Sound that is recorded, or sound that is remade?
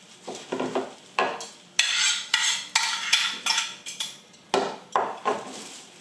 recorded